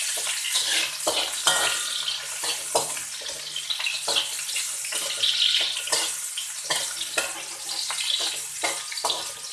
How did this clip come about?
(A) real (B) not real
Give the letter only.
A